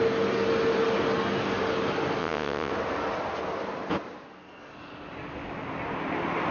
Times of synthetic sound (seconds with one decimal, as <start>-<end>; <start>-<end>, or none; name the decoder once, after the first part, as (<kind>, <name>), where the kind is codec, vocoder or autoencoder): 2.2-2.7 (vocoder, WaveNeXt)